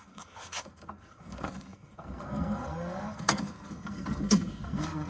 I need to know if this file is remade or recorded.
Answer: remade